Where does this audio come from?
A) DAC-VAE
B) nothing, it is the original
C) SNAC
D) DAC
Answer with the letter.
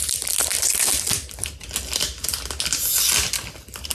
B